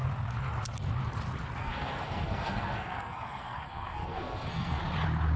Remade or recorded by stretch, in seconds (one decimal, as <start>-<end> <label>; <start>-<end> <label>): 0.0-1.6 recorded; 1.6-4.8 remade; 4.8-5.4 recorded